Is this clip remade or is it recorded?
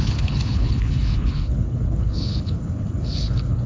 remade